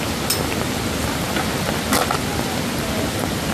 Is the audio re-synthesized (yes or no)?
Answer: no